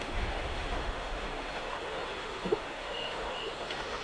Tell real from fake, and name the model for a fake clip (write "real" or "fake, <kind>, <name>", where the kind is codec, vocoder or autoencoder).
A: fake, autoencoder, DAC-VAE